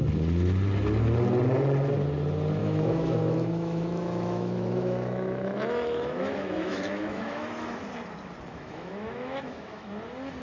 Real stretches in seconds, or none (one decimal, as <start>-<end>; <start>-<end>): 0.0-2.6; 7.8-8.5; 9.9-10.4